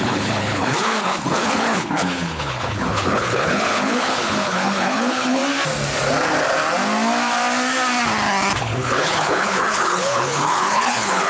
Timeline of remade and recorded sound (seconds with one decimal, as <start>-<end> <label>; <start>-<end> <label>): 0.0-5.4 remade; 5.4-8.6 recorded; 8.6-11.3 remade